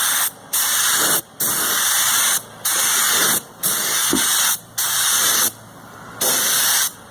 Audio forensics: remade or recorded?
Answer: recorded